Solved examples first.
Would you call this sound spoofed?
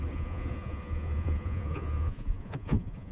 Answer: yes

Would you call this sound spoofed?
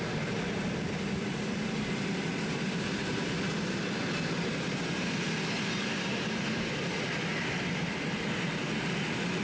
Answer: no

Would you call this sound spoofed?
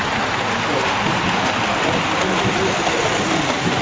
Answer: no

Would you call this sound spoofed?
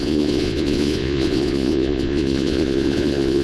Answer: yes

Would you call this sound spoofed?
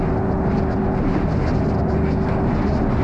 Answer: no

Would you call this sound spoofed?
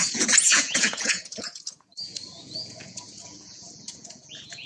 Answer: yes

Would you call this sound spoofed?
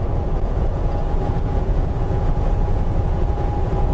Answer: yes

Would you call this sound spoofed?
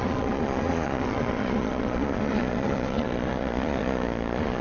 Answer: yes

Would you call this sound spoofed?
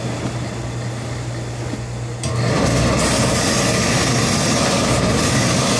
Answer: no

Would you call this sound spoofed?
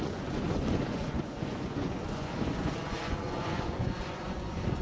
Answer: yes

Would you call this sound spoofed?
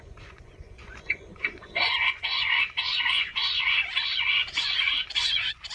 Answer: yes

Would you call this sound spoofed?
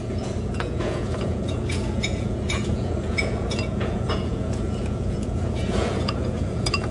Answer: yes